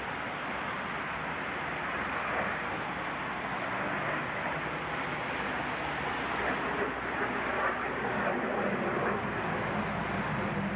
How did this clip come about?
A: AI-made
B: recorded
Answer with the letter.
B